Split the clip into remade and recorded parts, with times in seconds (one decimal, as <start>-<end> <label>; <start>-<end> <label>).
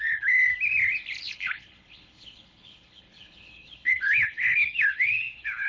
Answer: 0.0-0.5 remade; 0.5-1.3 recorded; 1.3-5.7 remade